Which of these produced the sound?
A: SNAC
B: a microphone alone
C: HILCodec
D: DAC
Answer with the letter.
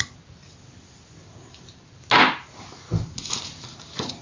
B